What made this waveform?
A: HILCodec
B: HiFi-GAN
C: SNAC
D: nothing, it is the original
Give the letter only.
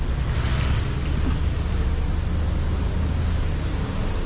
D